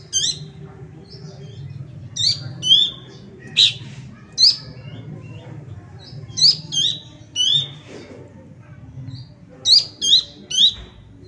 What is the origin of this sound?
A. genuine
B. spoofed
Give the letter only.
A